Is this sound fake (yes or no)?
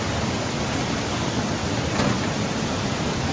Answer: no